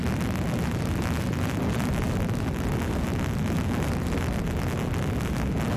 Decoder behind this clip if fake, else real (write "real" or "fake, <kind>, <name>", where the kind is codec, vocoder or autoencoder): real